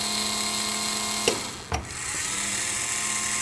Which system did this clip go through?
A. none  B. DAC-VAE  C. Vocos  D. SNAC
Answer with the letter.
A